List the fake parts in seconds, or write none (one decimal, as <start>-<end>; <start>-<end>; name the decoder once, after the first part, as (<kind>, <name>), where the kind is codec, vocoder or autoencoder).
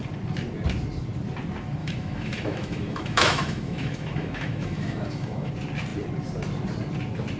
1.8-5.5 (autoencoder, DAC-VAE)